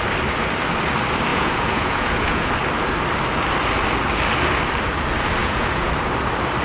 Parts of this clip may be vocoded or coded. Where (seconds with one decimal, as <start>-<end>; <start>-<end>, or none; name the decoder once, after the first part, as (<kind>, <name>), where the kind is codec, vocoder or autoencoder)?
1.3-2.5 (vocoder, Vocos); 5.4-5.9